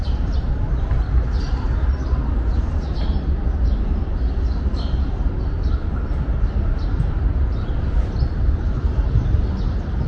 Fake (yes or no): no